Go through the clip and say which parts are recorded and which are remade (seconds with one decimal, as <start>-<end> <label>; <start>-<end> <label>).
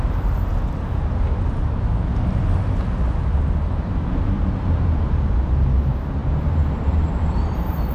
0.0-0.5 remade; 0.5-3.5 recorded; 3.5-7.9 remade